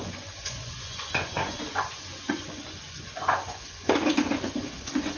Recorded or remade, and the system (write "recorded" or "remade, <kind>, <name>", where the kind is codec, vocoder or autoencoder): remade, vocoder, Vocos